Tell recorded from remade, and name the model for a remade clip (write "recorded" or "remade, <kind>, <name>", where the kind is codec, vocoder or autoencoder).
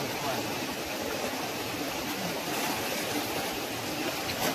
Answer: recorded